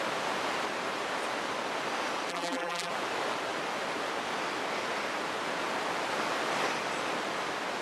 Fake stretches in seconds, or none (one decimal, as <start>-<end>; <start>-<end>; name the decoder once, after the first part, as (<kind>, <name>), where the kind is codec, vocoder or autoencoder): 2.3-2.9 (vocoder, BigVGAN v2)